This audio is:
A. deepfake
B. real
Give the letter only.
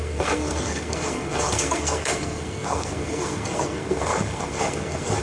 A